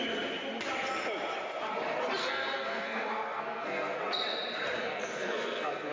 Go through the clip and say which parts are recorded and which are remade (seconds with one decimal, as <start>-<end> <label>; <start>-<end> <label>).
0.0-2.2 recorded; 2.2-4.0 remade; 4.0-4.8 recorded; 4.8-5.9 remade